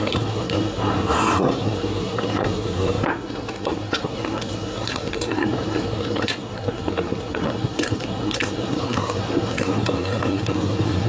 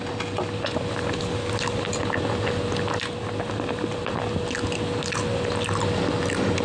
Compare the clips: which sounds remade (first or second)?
first